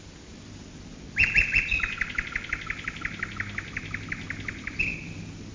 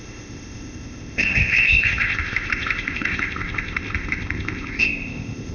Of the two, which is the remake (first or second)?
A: second